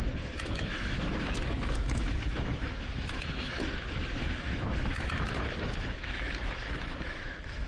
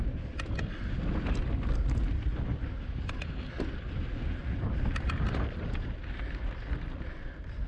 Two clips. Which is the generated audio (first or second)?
first